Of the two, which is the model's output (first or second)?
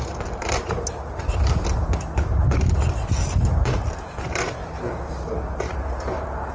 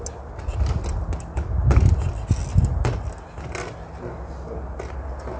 first